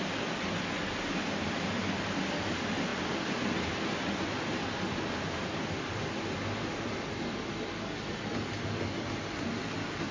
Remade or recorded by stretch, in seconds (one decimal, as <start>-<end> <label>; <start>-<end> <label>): 0.0-10.1 recorded